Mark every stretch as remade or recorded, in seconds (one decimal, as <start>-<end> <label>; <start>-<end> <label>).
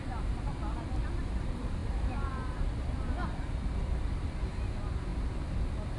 0.0-6.0 recorded